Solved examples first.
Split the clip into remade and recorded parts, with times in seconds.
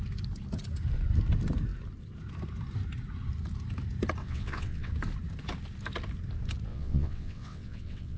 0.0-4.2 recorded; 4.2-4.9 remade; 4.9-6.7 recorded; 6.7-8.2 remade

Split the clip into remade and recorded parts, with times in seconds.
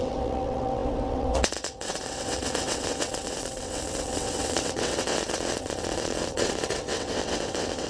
0.0-7.9 remade